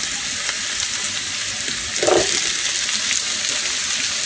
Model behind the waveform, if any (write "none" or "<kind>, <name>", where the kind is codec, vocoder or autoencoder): none